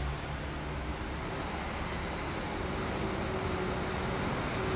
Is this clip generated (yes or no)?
no